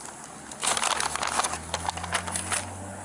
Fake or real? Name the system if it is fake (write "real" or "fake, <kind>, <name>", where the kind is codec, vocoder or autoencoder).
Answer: real